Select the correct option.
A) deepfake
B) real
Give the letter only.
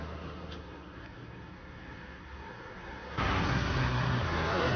A